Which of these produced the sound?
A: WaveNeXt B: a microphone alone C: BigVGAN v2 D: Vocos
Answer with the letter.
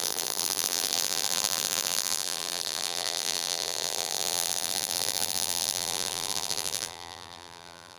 C